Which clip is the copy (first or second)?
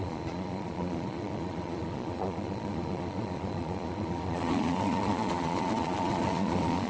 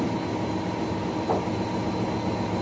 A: first